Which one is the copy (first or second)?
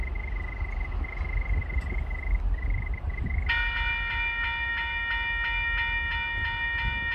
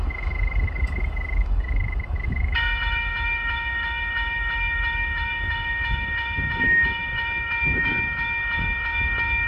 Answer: second